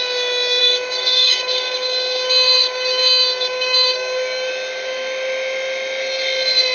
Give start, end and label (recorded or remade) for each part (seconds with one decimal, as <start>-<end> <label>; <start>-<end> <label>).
0.0-0.6 recorded; 0.6-4.5 remade; 4.5-6.7 recorded

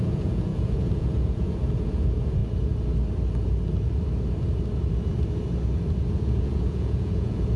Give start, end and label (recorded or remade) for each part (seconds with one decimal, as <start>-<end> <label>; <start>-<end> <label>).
0.0-2.4 remade; 2.4-6.1 recorded; 6.1-7.6 remade

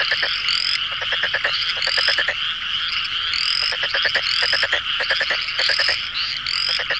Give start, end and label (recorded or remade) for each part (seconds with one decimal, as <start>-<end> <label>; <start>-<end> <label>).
0.0-7.0 recorded

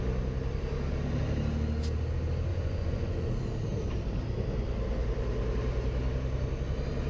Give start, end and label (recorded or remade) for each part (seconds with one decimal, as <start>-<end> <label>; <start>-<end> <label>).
0.0-2.5 recorded; 2.5-3.3 remade; 3.3-7.1 recorded

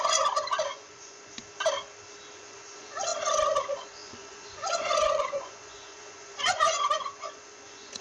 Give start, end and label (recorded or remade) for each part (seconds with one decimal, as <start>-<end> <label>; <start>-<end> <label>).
0.0-1.4 remade; 1.4-2.3 recorded; 2.3-3.1 remade; 3.1-3.6 recorded; 3.6-8.0 remade

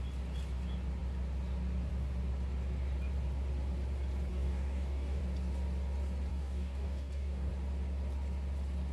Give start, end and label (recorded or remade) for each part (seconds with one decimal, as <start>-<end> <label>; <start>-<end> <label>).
0.0-4.3 recorded; 4.3-5.2 remade; 5.2-6.3 recorded; 6.3-7.5 remade; 7.5-8.9 recorded